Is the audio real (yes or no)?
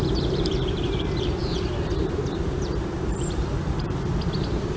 no